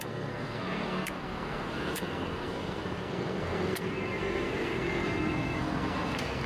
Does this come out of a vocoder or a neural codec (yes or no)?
yes